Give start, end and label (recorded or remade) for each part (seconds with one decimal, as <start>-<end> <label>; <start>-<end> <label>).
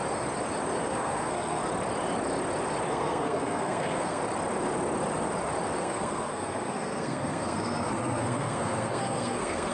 0.0-0.9 recorded; 0.9-1.6 remade; 1.6-2.9 recorded; 2.9-4.2 remade; 4.2-5.8 recorded; 5.8-9.7 remade